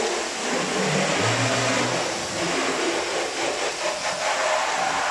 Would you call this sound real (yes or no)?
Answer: yes